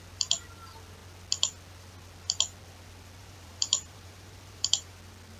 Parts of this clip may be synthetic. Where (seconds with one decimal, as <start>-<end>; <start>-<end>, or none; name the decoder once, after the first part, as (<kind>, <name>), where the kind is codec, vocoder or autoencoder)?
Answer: 3.2-4.9 (vocoder, BigVGAN v2)